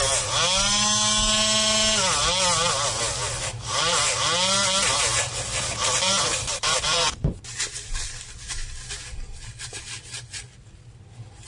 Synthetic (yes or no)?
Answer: no